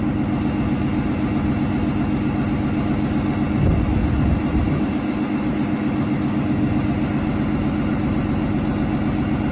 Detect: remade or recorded recorded